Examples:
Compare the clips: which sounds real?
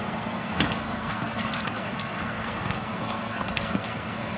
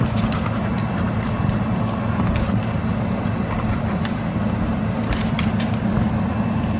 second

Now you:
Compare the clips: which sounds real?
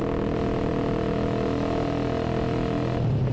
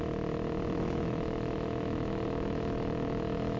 first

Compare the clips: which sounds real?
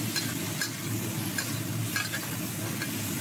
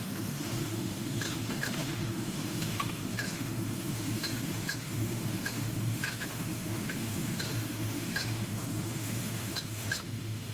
first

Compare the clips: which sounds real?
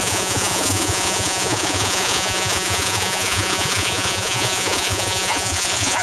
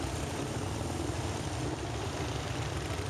second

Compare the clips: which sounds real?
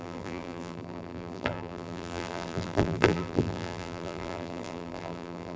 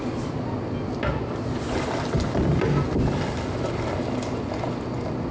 second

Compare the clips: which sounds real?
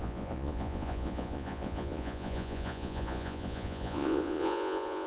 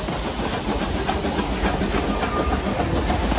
second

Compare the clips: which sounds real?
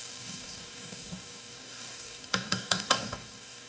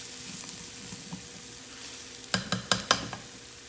second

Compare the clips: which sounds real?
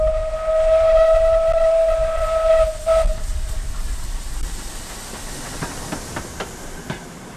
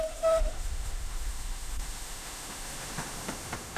first